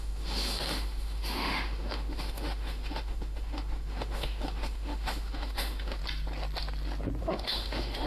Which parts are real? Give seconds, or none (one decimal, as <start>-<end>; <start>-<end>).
6.0-7.2